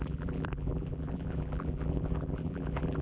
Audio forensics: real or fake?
fake